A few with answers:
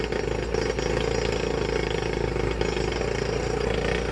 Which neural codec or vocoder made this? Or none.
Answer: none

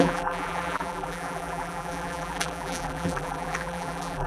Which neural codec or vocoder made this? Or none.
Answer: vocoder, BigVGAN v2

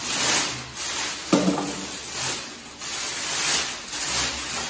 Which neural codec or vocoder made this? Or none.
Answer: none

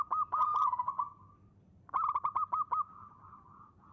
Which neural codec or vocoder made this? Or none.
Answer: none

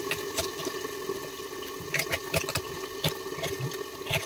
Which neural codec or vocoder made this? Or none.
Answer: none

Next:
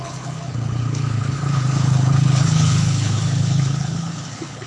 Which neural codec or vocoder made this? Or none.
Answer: codec, HILCodec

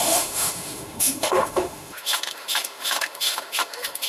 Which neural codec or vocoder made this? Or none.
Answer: autoencoder, DAC-VAE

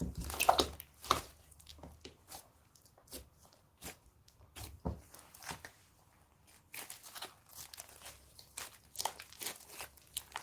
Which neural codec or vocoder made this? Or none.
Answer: none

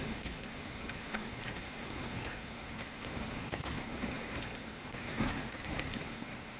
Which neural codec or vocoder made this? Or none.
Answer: codec, SNAC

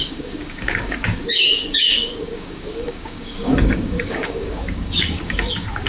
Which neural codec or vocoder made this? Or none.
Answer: codec, DAC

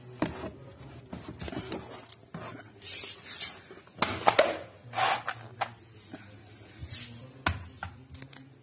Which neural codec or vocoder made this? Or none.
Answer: none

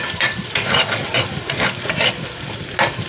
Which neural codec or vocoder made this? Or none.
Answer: none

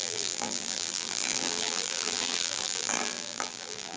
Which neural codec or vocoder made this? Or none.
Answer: vocoder, BigVGAN v2